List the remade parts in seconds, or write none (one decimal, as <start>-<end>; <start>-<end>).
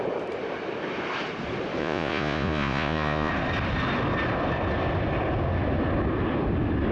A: 1.8-3.3